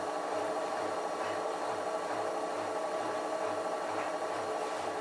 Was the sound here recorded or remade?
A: remade